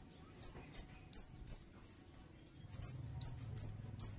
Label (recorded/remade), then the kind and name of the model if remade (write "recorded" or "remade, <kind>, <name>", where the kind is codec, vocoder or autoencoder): recorded